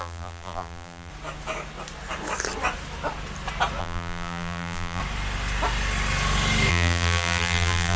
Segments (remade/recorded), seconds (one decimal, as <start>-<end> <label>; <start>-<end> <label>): 0.0-1.1 remade; 1.1-3.8 recorded; 3.8-5.0 remade; 5.0-6.7 recorded; 6.7-8.0 remade